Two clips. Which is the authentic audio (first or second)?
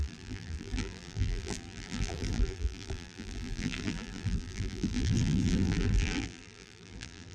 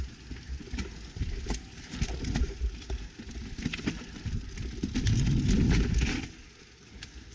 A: second